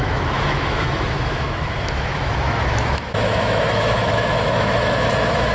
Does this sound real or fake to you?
fake